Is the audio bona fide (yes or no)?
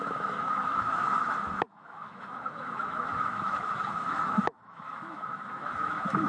no